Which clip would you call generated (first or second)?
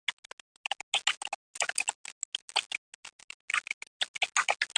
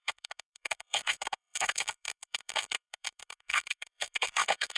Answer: second